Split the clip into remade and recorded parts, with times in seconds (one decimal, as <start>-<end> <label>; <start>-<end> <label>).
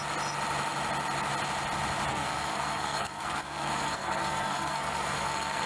0.0-2.1 recorded; 2.1-5.7 remade